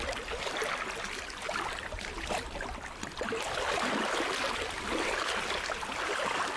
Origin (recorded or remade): recorded